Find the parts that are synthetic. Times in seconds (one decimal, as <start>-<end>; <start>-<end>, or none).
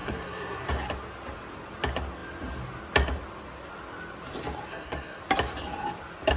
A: 0.0-0.7; 4.7-5.2